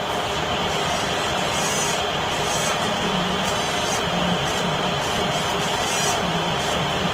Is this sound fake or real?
real